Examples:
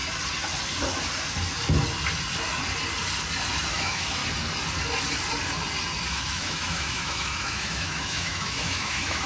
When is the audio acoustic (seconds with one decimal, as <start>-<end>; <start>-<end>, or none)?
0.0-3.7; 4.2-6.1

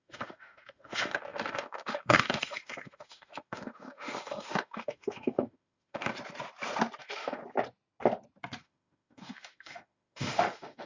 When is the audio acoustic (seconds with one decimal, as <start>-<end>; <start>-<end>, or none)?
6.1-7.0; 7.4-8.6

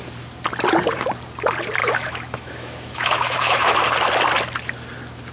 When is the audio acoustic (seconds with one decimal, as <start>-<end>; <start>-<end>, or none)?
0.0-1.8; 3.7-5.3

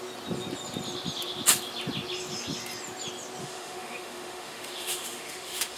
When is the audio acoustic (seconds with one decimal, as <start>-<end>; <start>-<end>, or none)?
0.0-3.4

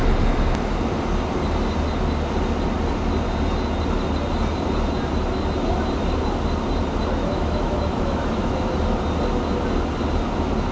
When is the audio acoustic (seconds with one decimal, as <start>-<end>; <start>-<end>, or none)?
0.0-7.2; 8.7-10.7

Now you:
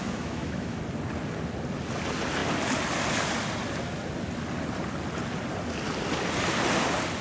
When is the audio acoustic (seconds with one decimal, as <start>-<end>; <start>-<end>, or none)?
0.8-7.2

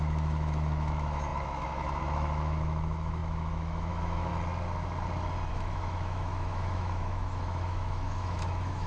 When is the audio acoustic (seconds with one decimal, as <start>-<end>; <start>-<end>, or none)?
4.3-5.5